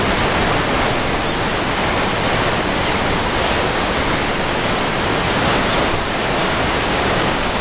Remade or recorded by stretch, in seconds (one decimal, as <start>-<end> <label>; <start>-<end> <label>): 0.0-3.2 recorded; 3.2-3.8 remade; 3.8-6.4 recorded; 6.4-7.6 remade